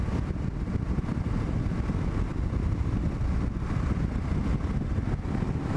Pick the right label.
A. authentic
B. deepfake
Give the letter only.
B